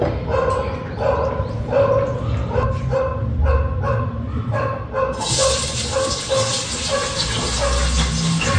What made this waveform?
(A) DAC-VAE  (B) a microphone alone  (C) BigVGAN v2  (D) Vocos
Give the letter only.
B